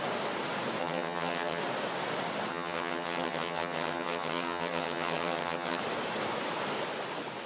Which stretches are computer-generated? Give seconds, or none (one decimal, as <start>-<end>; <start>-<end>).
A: 0.8-1.6; 2.5-5.8